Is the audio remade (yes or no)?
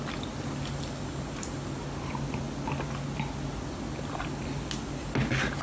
no